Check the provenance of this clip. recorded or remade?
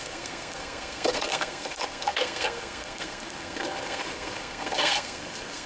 remade